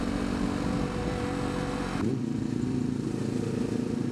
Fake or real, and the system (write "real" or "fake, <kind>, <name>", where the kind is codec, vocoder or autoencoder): real